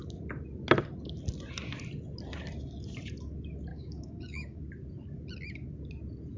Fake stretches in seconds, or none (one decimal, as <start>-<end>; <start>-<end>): 3.7-4.6